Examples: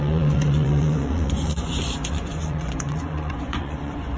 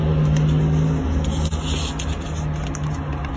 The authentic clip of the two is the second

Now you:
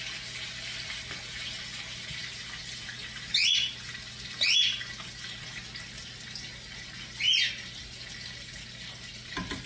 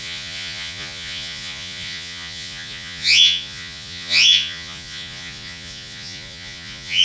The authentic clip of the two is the first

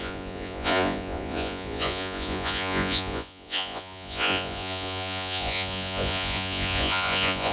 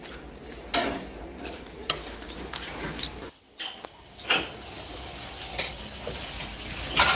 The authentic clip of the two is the second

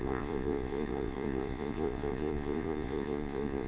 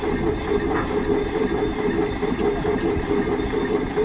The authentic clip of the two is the second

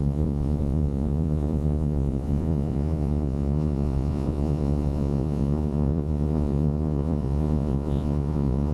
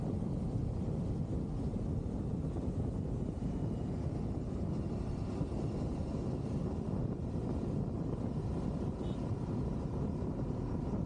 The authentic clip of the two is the second